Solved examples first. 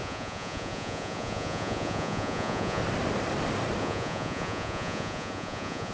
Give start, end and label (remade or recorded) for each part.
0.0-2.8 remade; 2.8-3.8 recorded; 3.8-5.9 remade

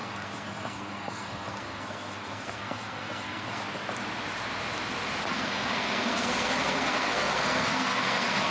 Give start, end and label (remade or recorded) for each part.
0.0-3.6 remade; 3.6-5.3 recorded; 5.3-8.5 remade

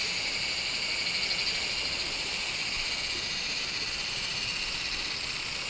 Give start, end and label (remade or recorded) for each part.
0.0-5.7 recorded

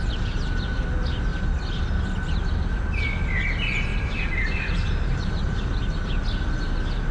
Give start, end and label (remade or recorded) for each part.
0.0-3.9 recorded; 3.9-5.4 remade; 5.4-7.1 recorded

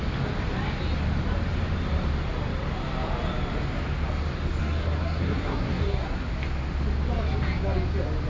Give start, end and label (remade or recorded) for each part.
0.0-4.6 recorded; 4.6-6.3 remade; 6.3-8.3 recorded

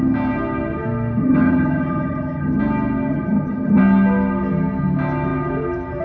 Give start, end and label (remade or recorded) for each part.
0.0-1.2 recorded; 1.2-2.6 remade; 2.6-3.1 recorded; 3.1-3.8 remade; 3.8-6.0 recorded

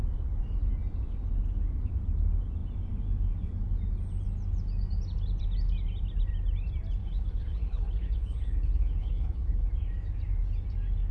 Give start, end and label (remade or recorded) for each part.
0.0-7.0 recorded; 7.0-9.7 remade; 9.7-11.1 recorded